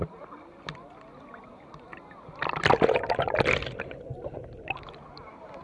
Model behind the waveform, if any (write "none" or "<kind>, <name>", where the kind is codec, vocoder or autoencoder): none